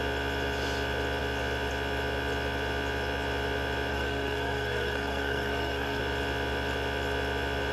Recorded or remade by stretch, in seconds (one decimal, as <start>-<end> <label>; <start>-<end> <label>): 0.0-3.9 recorded; 3.9-6.0 remade; 6.0-7.7 recorded